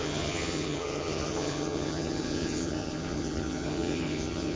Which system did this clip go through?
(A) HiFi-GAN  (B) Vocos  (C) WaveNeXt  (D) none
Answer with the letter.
A